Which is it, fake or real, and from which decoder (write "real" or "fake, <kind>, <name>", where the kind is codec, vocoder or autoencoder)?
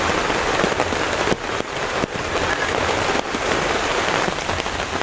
real